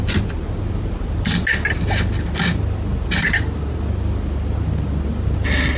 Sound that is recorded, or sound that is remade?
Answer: recorded